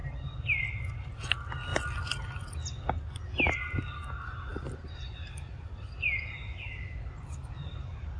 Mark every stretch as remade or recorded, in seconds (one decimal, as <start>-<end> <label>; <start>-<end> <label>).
0.0-8.2 recorded